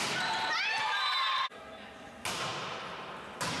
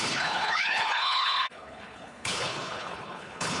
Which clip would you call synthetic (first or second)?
second